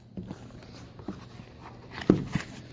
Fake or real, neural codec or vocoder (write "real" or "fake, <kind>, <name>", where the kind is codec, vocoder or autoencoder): real